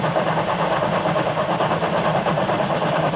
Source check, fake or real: fake